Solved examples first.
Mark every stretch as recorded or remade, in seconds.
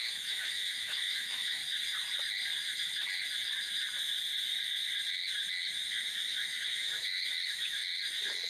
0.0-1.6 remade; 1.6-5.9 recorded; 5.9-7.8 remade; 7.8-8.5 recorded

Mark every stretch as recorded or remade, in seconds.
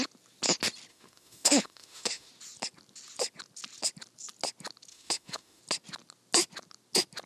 0.0-0.9 recorded; 0.9-2.3 remade; 2.3-4.9 recorded; 4.9-5.6 remade; 5.6-7.3 recorded